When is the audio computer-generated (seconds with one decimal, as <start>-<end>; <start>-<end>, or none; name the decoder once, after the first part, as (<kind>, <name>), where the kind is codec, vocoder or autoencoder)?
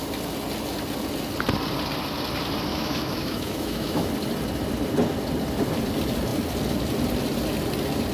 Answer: 2.7-4.1 (autoencoder, DAC-VAE)